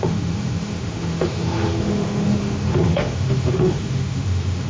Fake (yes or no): yes